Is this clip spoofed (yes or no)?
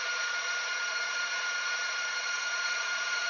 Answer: yes